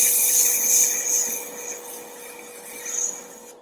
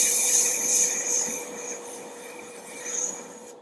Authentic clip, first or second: first